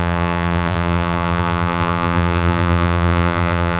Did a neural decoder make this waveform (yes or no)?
yes